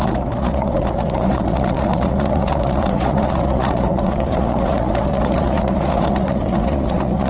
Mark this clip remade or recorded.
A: remade